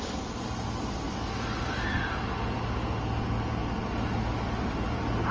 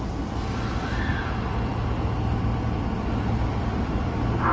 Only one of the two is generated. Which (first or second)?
second